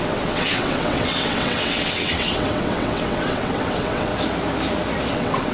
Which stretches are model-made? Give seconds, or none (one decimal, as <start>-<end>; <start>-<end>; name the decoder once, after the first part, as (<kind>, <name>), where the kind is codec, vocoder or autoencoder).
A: 0.0-4.1 (vocoder, WaveNeXt); 5.1-5.5